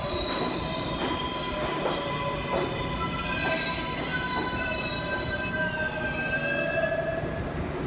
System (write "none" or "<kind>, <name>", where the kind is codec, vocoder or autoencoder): none